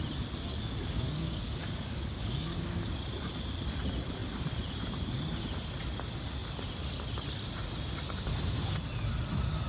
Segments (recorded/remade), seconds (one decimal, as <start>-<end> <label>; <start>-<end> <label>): 0.0-0.5 recorded; 0.5-2.7 remade; 2.7-9.7 recorded